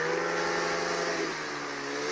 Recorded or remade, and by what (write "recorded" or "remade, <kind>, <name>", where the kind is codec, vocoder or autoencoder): recorded